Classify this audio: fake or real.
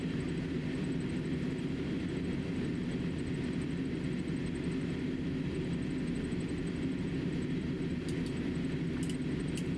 real